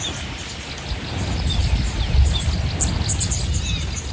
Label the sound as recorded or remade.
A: recorded